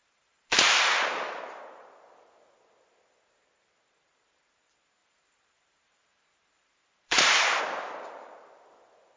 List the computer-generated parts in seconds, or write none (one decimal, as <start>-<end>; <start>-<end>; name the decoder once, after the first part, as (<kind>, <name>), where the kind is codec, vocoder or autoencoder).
0.0-1.6 (vocoder, BigVGAN v2); 5.0-7.6